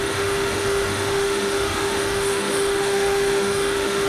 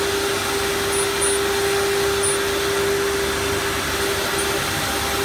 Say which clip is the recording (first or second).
second